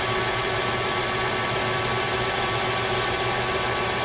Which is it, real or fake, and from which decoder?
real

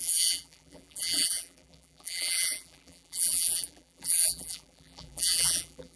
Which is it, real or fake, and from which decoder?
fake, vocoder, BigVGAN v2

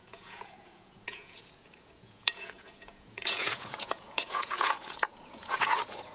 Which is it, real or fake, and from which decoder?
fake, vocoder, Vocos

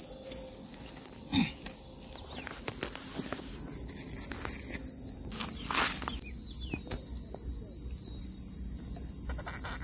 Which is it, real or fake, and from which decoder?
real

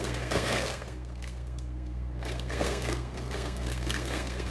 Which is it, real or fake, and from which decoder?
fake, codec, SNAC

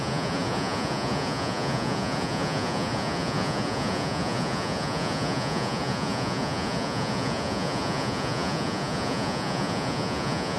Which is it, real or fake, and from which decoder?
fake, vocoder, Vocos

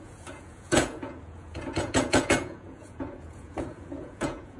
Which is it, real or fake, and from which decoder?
fake, vocoder, Vocos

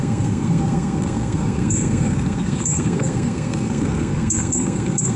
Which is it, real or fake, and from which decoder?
fake, codec, SNAC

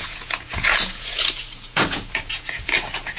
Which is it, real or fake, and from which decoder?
fake, vocoder, Vocos